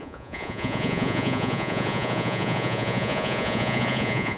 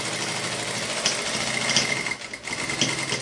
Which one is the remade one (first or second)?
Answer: first